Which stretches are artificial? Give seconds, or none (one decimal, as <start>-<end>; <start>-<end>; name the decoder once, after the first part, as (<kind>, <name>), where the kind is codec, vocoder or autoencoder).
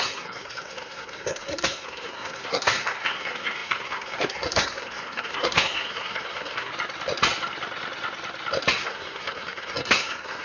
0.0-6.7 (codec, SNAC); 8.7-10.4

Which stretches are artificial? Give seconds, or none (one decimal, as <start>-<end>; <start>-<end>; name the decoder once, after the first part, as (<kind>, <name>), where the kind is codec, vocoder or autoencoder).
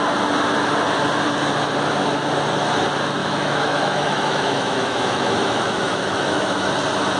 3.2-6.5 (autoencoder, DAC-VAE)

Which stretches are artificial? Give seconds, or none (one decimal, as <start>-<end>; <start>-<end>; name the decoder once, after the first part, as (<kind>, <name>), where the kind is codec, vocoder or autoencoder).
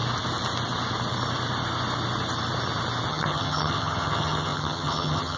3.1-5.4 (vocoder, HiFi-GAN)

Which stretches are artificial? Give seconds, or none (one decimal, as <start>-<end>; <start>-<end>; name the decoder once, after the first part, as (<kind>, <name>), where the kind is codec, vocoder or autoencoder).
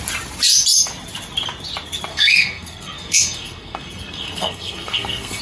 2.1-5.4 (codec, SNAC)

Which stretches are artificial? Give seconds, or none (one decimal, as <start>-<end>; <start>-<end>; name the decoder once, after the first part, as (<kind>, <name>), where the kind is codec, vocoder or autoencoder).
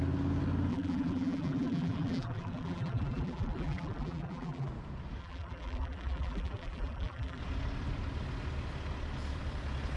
0.7-4.7 (vocoder, BigVGAN v2); 5.2-7.4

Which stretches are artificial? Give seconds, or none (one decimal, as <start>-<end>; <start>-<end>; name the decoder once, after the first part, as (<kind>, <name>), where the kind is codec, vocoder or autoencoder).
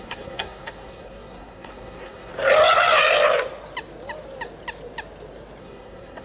0.0-2.3 (codec, SNAC); 5.6-6.2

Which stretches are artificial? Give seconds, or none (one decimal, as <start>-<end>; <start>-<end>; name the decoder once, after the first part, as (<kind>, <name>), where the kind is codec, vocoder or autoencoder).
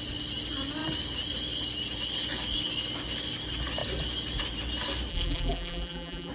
5.1-6.3 (vocoder, BigVGAN v2)